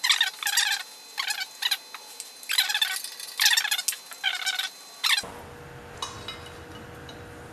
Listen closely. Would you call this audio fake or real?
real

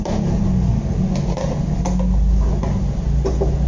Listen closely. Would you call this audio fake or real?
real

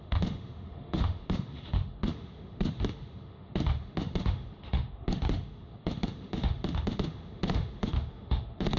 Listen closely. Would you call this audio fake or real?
fake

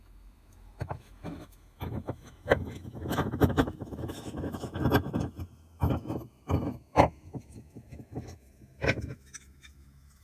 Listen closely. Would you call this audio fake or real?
fake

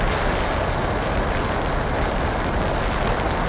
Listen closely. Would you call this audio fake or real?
real